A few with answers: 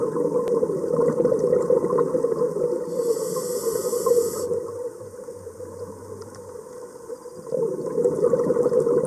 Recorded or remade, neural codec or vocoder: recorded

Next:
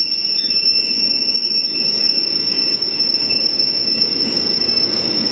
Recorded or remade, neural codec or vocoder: remade, codec, DAC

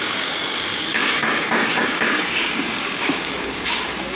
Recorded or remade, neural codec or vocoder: remade, codec, DAC